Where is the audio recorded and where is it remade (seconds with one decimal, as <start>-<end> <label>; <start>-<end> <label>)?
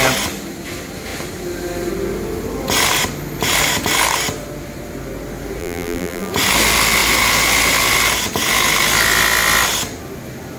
0.0-5.6 recorded; 5.6-6.3 remade; 6.3-10.6 recorded